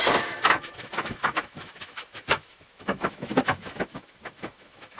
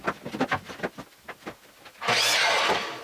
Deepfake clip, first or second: first